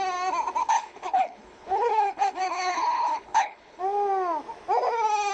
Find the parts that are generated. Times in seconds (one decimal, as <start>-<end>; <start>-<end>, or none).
0.6-3.8